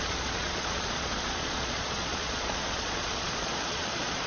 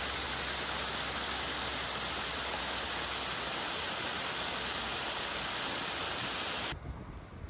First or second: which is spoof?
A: first